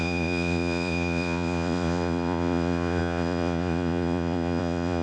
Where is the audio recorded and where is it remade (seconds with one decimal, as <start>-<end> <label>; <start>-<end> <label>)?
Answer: 0.0-5.0 remade